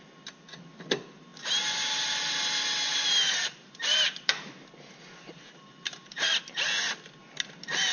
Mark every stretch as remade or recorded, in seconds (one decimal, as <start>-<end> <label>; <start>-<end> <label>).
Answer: 0.0-2.9 recorded; 2.9-4.7 remade; 4.7-5.3 recorded; 5.3-6.4 remade; 6.4-7.9 recorded